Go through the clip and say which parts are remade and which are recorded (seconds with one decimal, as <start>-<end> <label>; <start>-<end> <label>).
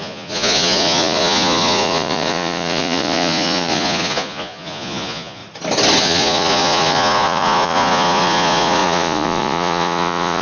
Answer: 0.0-5.4 remade; 5.4-6.0 recorded; 6.0-10.4 remade